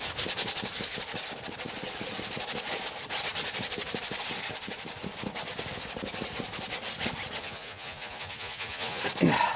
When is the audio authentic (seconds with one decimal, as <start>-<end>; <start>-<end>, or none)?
0.0-7.4; 9.0-9.6